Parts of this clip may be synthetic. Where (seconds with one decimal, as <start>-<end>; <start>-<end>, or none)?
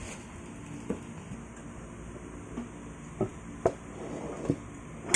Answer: none